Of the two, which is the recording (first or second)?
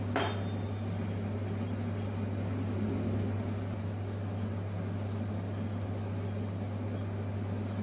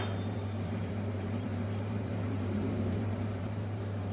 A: first